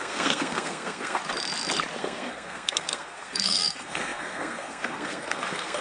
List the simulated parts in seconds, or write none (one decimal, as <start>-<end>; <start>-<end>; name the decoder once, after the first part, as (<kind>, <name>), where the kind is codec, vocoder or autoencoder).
0.0-1.2 (codec, SNAC); 2.0-5.8